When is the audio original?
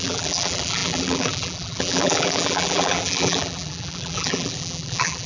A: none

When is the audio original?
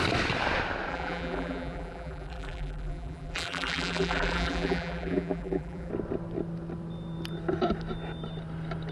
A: 0.0-0.9; 5.9-8.9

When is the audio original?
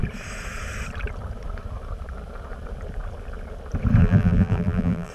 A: 0.0-4.0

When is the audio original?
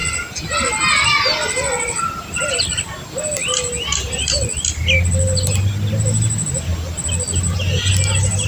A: 0.0-3.4; 4.3-8.5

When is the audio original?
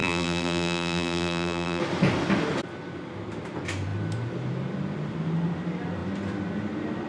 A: 1.8-7.1